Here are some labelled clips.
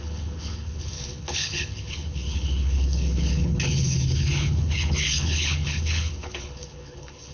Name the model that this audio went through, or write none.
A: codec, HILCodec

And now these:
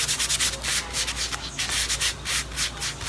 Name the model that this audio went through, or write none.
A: none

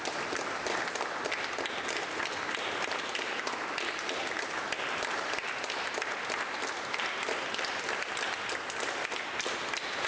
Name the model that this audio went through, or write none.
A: none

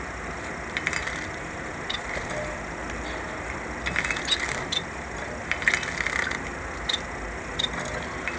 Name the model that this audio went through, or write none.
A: none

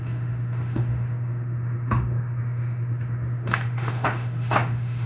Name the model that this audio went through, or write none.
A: autoencoder, DAC-VAE